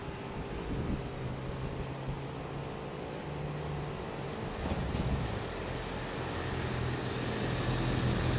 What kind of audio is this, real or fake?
real